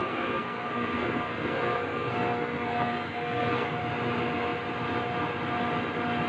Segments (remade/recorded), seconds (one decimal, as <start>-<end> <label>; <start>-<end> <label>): 0.0-3.8 remade; 3.8-6.3 recorded